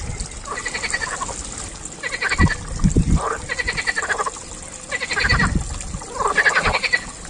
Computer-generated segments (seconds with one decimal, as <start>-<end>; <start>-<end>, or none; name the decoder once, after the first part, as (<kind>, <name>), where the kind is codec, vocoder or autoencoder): none